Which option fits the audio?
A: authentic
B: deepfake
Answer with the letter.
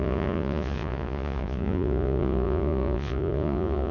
B